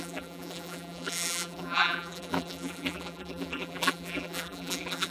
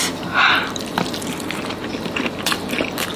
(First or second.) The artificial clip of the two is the first